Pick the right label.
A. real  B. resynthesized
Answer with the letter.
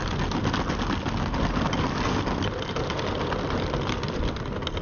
A